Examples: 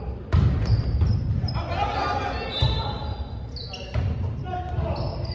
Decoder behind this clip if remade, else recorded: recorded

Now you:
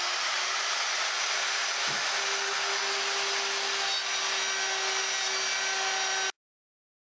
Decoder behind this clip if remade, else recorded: recorded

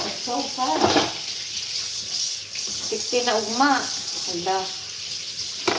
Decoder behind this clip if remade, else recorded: recorded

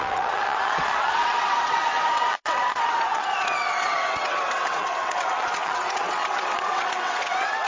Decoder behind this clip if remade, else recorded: remade, vocoder, WaveNeXt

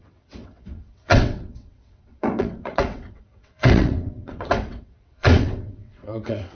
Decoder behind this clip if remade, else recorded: remade, vocoder, WaveNeXt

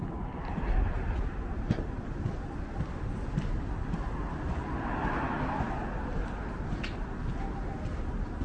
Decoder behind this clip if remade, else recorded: recorded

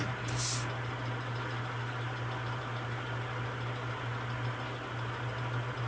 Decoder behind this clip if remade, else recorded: recorded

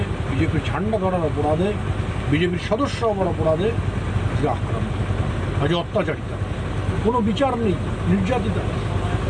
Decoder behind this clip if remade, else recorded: recorded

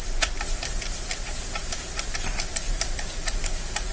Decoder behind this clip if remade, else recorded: recorded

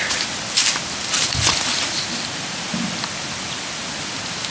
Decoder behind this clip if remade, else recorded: recorded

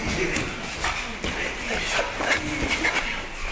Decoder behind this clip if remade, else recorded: recorded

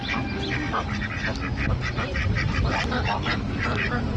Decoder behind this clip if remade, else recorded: recorded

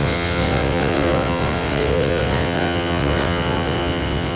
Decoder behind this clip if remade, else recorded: remade, vocoder, WaveNeXt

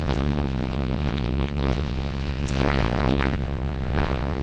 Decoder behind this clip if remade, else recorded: remade, vocoder, WaveNeXt